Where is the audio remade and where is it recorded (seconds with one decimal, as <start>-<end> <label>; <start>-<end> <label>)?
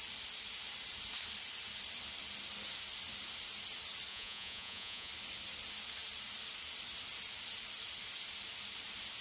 0.0-4.1 recorded; 4.1-5.1 remade; 5.1-9.2 recorded